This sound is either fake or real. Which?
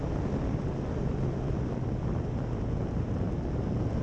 real